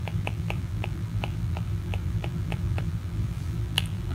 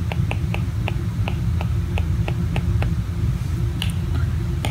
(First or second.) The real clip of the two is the second